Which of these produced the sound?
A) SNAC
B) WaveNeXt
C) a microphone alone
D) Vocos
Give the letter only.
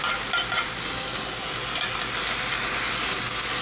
C